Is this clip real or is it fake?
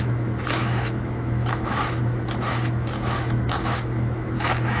fake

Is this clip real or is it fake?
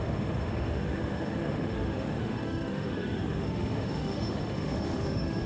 fake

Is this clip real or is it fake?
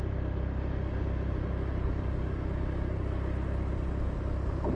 real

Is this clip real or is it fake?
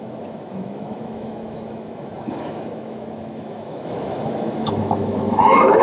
fake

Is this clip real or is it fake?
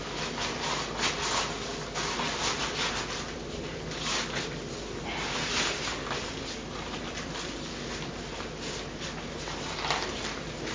real